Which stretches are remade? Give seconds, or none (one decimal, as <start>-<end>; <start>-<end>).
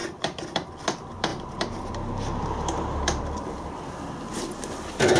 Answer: 0.0-0.8; 1.3-4.4